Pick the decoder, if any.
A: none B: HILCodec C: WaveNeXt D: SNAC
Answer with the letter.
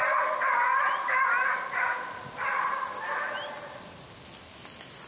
A